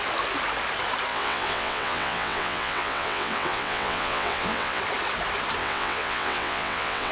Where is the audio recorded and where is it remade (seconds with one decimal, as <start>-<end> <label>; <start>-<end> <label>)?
0.0-1.1 recorded; 1.1-4.8 remade; 4.8-5.6 recorded; 5.6-7.1 remade